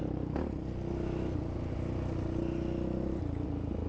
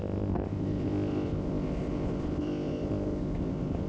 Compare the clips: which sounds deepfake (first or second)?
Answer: second